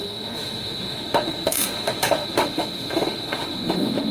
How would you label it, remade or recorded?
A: remade